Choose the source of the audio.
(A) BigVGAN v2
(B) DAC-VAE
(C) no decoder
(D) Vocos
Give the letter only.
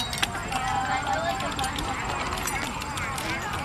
C